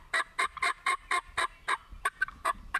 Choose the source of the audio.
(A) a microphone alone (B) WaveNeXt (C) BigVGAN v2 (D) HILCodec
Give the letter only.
A